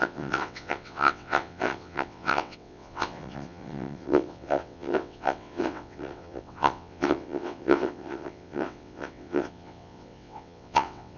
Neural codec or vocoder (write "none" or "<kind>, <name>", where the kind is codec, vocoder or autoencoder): vocoder, WaveNeXt